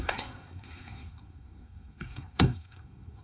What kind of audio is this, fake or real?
fake